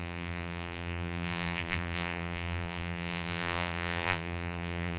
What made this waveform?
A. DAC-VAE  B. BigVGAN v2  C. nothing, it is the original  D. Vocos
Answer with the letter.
B